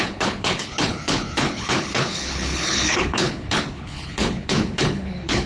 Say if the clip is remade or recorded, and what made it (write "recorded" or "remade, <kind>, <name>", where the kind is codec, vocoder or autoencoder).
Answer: remade, codec, HILCodec